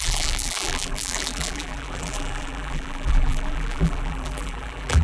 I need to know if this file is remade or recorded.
remade